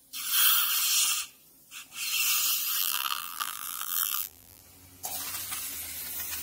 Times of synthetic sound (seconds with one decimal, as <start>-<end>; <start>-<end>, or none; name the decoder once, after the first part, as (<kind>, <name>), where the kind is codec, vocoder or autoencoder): 2.8-4.6 (vocoder, BigVGAN v2)